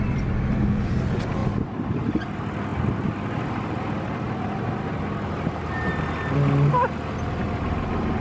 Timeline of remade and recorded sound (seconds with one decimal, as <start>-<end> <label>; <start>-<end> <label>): 0.0-8.2 recorded